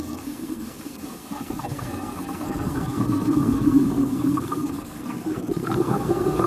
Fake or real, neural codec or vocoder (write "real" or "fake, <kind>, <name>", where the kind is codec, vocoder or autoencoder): fake, codec, SNAC